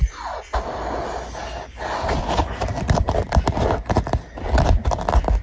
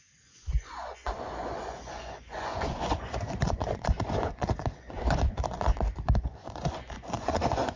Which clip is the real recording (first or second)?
first